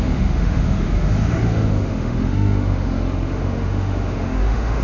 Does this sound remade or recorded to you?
remade